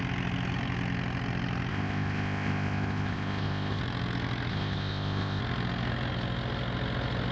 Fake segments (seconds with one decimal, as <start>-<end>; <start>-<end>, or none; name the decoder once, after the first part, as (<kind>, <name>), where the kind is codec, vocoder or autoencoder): 1.7-3.8 (codec, ZipCodec); 4.5-5.4